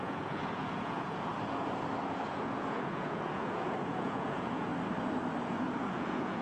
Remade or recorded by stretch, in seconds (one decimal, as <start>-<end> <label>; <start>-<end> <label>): 0.0-1.3 remade; 1.3-2.3 recorded; 2.3-4.7 remade; 4.7-5.5 recorded; 5.5-6.4 remade